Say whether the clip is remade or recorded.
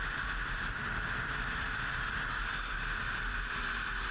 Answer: recorded